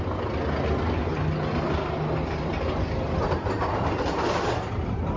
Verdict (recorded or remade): recorded